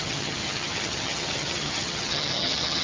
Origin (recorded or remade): remade